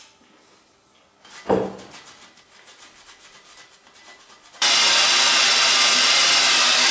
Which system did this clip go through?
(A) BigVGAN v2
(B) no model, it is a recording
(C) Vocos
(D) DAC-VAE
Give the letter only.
B